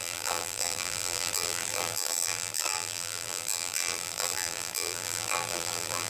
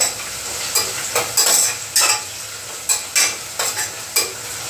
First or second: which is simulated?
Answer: first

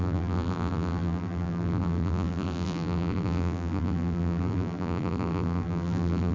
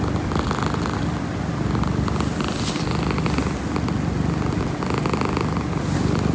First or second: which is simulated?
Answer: first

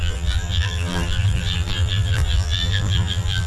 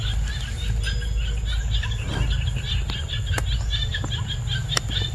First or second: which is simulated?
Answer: first